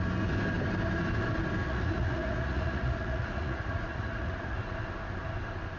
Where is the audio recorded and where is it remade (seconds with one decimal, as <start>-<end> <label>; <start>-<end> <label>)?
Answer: 0.0-1.6 recorded; 1.6-4.9 remade; 4.9-5.8 recorded